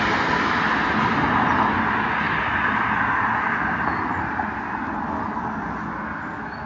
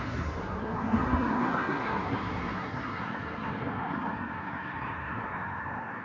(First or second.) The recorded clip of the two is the first